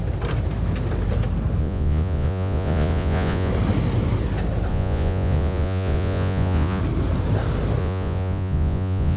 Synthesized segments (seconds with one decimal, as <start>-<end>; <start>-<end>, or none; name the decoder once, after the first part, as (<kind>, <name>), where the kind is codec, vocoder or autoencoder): 1.6-3.5 (vocoder, Vocos); 4.7-6.8; 7.8-9.2